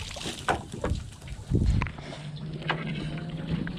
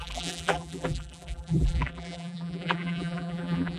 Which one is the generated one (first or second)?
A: second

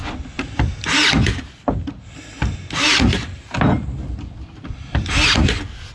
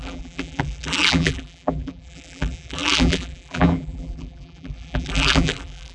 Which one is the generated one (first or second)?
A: second